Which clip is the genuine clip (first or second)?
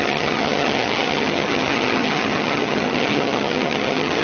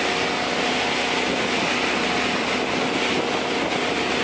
second